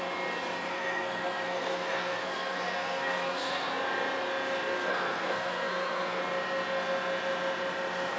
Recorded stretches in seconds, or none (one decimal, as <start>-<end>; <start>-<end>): 0.0-0.7; 3.7-4.9; 6.2-8.2